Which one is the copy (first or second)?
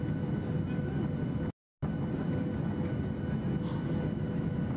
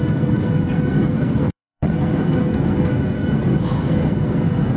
second